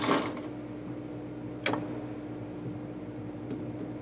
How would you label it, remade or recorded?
recorded